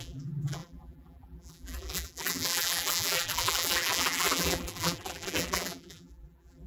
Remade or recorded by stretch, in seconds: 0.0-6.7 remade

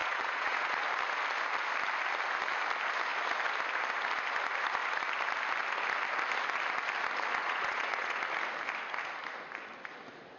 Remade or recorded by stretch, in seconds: 0.0-0.8 remade; 0.8-7.4 recorded; 7.4-8.2 remade; 8.2-10.4 recorded

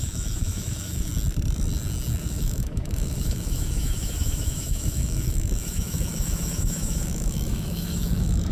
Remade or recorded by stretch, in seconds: 0.0-1.1 remade; 1.1-2.2 recorded; 2.2-8.5 remade

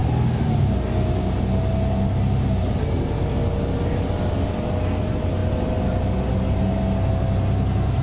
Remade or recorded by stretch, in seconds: 0.0-8.0 recorded

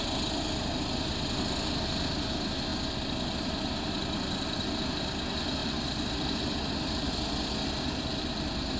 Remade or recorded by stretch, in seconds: 0.0-5.6 recorded; 5.6-7.2 remade; 7.2-8.8 recorded

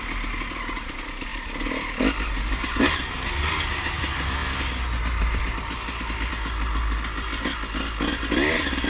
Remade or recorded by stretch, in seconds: 0.0-8.9 recorded

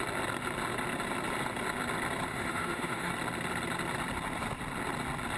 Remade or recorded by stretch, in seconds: 0.0-2.3 recorded; 2.3-3.1 remade; 3.1-5.4 recorded

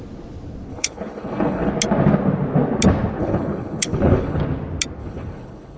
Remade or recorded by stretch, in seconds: 0.0-0.7 recorded; 0.7-1.7 remade; 1.7-3.2 recorded; 3.2-4.4 remade; 4.4-5.0 recorded; 5.0-5.8 remade